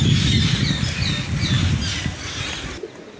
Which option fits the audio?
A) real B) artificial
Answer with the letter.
A